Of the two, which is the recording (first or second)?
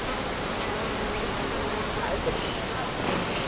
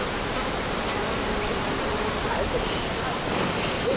first